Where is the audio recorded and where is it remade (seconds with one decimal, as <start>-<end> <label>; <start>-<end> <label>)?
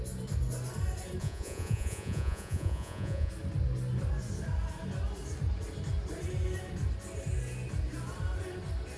0.0-1.2 recorded; 1.2-3.3 remade; 3.3-9.0 recorded